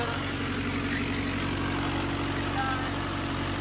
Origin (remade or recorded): recorded